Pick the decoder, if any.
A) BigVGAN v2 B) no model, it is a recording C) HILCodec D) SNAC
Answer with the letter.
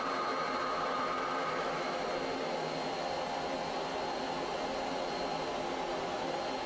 B